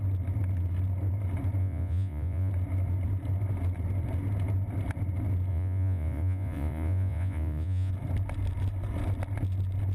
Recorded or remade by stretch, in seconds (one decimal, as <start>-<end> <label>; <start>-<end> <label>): 0.0-1.6 recorded; 1.6-2.5 remade; 2.5-5.5 recorded; 5.5-7.9 remade; 7.9-9.9 recorded